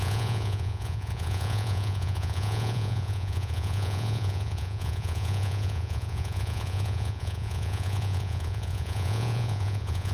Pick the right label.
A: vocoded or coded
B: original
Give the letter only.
A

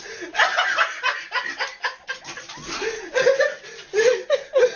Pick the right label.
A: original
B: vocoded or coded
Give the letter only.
A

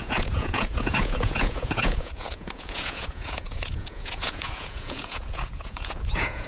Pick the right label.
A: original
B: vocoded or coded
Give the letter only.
B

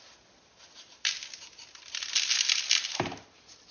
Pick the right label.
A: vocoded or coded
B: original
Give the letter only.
B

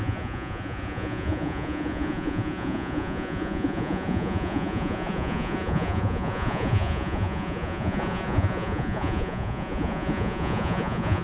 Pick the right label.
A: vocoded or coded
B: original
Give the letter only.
A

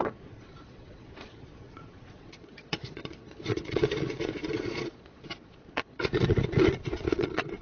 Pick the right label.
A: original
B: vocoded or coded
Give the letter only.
B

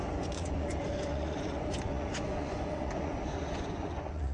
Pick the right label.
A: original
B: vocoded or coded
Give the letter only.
B